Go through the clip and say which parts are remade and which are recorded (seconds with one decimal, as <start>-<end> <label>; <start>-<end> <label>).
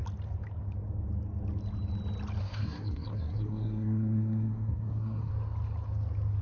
0.0-2.4 recorded; 2.4-5.3 remade; 5.3-6.4 recorded